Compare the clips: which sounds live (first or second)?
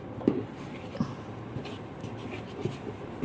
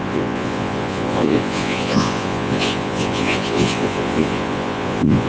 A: first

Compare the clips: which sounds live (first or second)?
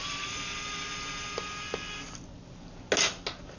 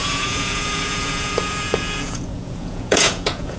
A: first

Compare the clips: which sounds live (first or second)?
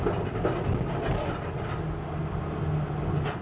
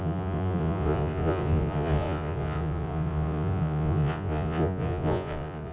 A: first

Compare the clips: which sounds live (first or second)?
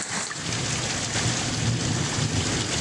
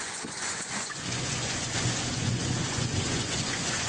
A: first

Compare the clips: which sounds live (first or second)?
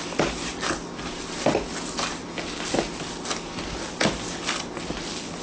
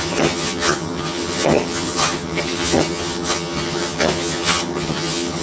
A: first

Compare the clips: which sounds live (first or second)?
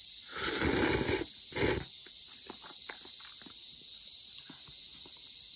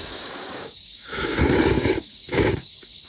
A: first